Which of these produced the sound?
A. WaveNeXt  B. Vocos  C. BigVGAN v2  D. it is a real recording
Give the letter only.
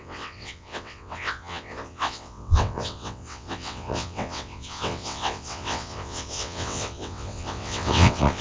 A